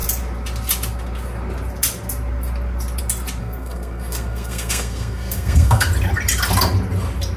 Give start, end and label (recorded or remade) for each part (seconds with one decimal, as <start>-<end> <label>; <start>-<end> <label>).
0.0-3.4 recorded; 3.4-5.9 remade; 5.9-7.4 recorded